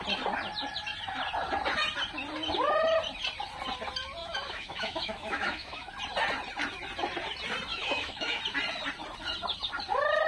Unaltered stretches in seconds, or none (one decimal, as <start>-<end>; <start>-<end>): 0.0-4.2; 5.9-7.7; 8.4-10.3